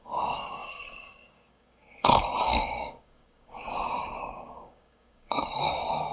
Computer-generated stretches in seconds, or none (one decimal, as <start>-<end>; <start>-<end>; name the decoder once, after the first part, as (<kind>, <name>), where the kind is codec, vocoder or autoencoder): 0.0-6.1 (codec, DAC)